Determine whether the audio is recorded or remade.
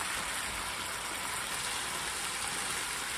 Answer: recorded